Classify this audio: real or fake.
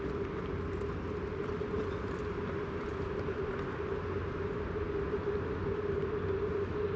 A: real